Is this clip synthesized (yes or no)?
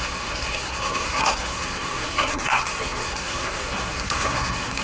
yes